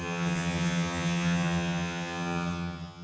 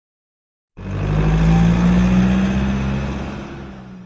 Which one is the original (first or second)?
second